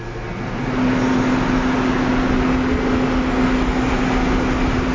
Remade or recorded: recorded